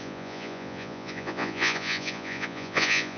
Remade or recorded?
remade